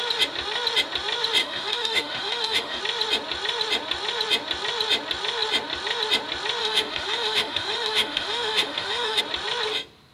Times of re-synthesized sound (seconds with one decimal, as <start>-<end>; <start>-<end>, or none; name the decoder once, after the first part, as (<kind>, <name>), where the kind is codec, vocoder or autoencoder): 1.4-2.8 (autoencoder, DAC-VAE); 6.6-9.2